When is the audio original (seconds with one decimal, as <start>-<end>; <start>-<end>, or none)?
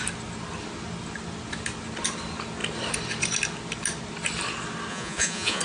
0.0-4.9